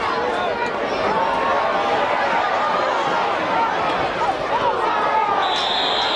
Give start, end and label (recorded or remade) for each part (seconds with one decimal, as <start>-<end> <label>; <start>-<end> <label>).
0.0-6.2 recorded